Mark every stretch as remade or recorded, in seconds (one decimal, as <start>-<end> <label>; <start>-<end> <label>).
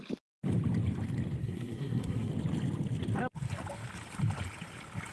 0.0-1.4 recorded; 1.4-2.3 remade; 2.3-5.1 recorded